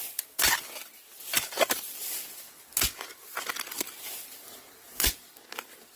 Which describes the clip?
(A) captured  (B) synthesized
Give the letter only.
A